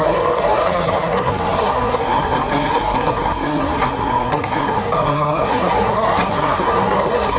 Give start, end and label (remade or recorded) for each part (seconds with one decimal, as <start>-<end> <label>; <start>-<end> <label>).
0.0-7.4 remade